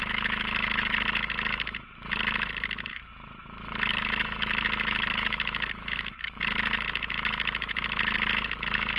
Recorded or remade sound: remade